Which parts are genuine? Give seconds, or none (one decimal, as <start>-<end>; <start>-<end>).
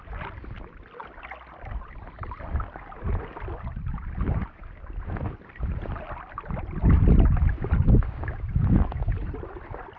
0.0-10.0